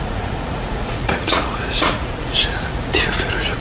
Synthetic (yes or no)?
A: yes